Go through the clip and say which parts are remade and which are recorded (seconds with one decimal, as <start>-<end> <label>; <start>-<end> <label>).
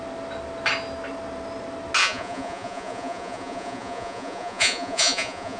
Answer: 0.0-2.0 recorded; 2.0-5.6 remade